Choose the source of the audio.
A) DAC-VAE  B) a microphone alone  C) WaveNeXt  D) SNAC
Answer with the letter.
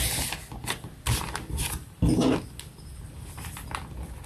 B